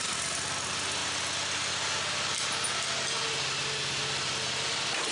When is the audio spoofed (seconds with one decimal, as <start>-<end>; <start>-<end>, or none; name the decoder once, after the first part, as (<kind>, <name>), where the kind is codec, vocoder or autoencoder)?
none

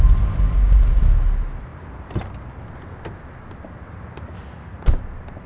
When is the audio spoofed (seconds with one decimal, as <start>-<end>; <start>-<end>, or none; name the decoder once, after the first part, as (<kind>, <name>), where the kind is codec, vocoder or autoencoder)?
none

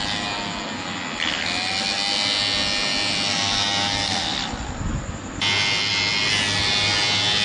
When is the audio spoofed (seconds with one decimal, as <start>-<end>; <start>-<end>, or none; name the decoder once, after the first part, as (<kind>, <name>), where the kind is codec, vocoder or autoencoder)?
none

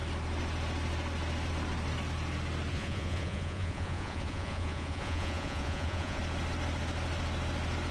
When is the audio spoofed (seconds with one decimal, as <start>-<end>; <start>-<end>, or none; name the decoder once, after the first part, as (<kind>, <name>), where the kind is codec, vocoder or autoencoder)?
2.7-6.2 (vocoder, Vocos)

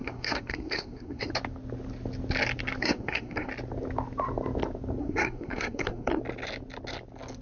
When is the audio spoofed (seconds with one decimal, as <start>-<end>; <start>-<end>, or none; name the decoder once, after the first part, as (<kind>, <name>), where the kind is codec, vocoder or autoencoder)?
0.0-1.3 (codec, SNAC); 2.8-3.5; 5.0-6.2